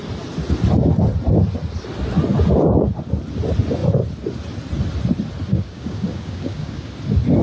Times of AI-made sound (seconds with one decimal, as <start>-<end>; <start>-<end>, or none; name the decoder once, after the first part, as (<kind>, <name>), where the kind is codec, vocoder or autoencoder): 5.5-6.9 (codec, DAC)